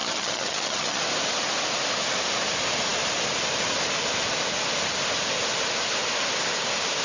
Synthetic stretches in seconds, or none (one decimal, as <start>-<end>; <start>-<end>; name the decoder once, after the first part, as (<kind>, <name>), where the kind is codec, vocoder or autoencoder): 0.0-1.0 (vocoder, HiFi-GAN)